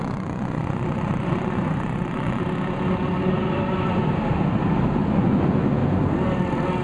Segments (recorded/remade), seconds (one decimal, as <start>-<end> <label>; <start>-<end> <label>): 0.0-2.4 remade; 2.4-5.1 recorded; 5.1-5.8 remade; 5.8-6.8 recorded